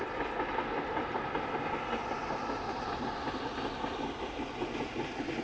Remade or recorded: recorded